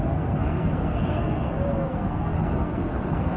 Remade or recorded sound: remade